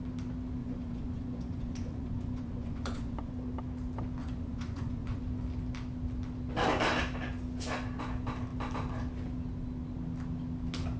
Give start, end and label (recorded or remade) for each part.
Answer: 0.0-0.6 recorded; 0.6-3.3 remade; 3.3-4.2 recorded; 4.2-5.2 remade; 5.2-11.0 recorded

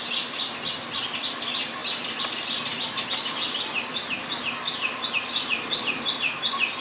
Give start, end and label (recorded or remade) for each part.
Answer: 0.0-6.8 recorded

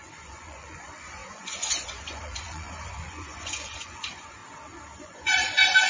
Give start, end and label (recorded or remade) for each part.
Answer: 0.0-4.4 remade; 4.4-5.0 recorded; 5.0-5.9 remade

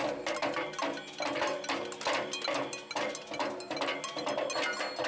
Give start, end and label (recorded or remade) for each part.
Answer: 0.0-5.1 recorded

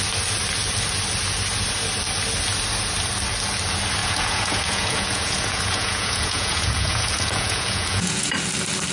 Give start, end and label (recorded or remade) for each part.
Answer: 0.0-4.0 recorded; 4.0-8.3 remade; 8.3-8.9 recorded

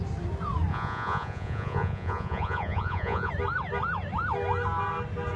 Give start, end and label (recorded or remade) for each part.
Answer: 0.0-0.7 recorded; 0.7-3.3 remade; 3.3-5.4 recorded

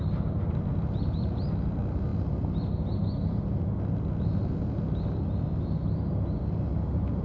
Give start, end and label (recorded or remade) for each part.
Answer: 0.0-7.2 recorded

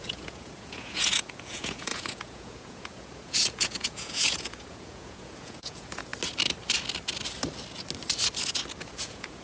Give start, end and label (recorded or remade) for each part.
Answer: 0.0-6.1 remade; 6.1-8.8 recorded; 8.8-9.4 remade